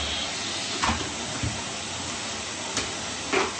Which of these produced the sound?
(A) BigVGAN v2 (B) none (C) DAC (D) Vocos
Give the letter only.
B